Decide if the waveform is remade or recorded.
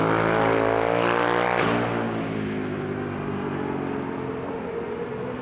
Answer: recorded